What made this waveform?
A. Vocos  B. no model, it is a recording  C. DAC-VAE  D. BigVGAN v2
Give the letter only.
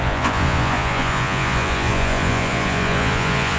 A